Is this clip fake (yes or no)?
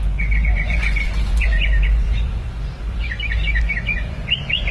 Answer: yes